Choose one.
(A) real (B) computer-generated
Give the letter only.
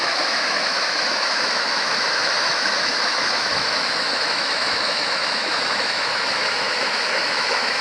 B